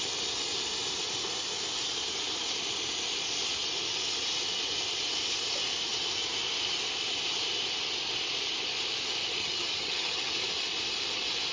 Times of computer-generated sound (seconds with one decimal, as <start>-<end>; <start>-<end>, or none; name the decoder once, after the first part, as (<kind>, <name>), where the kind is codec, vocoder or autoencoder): 9.4-10.3 (vocoder, HiFi-GAN)